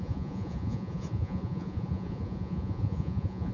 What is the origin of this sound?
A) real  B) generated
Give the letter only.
B